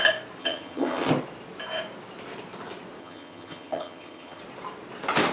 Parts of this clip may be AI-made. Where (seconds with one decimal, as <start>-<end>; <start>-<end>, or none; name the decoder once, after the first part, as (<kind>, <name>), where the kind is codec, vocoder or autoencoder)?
0.4-1.1 (vocoder, HiFi-GAN); 3.0-4.4